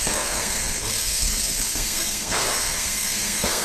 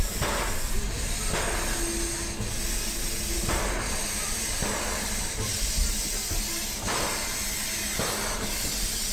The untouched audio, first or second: second